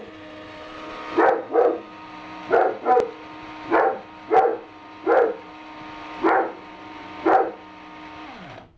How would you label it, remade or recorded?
recorded